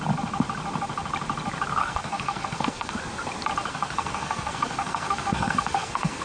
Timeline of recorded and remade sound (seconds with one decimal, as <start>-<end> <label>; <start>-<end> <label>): 0.0-1.8 recorded; 1.8-2.9 remade; 2.9-3.7 recorded; 3.7-6.2 remade